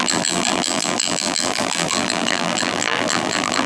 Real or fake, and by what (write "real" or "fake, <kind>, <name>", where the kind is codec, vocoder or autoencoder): fake, vocoder, BigVGAN v2